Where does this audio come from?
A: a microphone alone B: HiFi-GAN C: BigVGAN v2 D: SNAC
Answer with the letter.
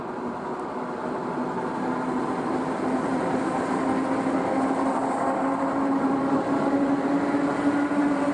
A